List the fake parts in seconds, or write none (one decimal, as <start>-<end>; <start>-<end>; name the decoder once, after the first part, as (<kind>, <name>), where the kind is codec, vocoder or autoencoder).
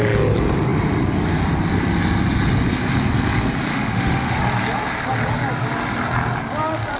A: 3.7-4.4 (autoencoder, DAC-VAE)